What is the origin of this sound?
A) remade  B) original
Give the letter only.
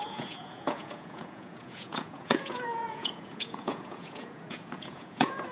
A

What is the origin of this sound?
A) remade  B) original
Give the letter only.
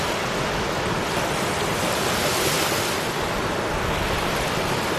B